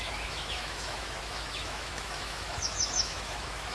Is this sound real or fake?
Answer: fake